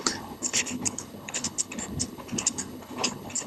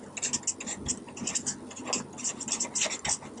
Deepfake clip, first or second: first